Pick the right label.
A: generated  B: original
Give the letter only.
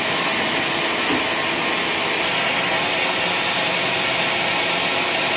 B